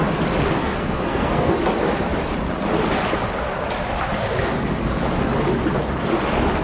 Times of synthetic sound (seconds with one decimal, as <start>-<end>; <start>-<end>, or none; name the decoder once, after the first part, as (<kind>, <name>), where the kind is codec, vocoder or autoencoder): 0.6-1.6 (codec, SNAC)